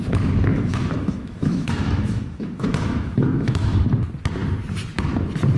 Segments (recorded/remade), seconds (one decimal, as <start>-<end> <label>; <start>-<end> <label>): 0.0-0.5 recorded; 0.5-3.9 remade; 3.9-5.6 recorded